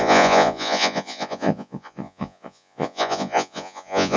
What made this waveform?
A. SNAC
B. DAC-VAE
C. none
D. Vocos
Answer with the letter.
D